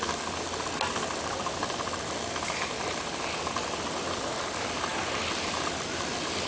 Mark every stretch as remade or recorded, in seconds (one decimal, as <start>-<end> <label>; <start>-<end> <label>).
0.0-6.5 recorded